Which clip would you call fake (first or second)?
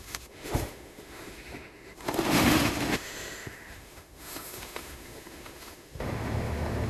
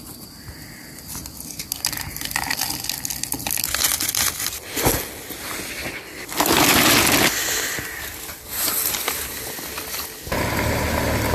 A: first